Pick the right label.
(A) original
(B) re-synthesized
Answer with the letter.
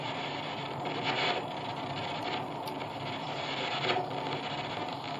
A